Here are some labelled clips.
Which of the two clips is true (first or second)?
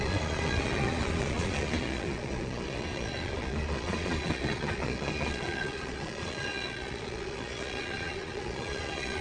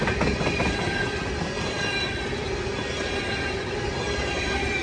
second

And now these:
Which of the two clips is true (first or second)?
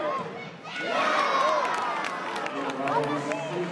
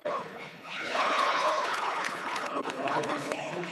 first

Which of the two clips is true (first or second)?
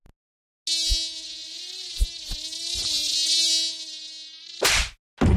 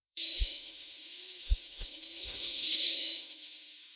first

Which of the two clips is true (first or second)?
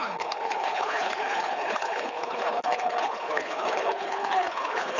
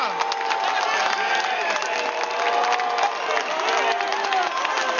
second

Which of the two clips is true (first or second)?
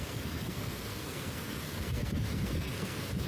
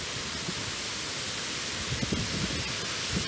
second